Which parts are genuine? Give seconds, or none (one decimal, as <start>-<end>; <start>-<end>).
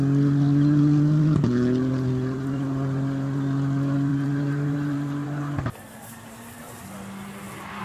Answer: 0.0-4.1; 6.7-7.8